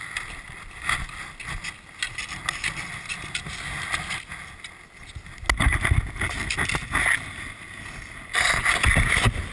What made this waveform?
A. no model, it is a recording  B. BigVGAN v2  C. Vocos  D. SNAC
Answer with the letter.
A